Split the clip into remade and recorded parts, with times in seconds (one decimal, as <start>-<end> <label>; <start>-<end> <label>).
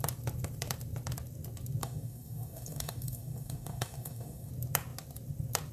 0.0-1.8 recorded; 1.8-4.5 remade; 4.5-5.7 recorded